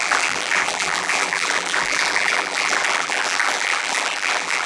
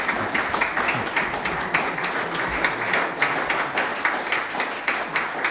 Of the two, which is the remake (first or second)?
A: first